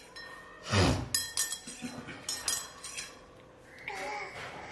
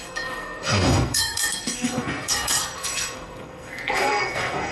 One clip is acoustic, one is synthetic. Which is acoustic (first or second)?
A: first